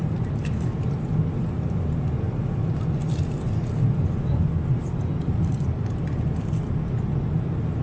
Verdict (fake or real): real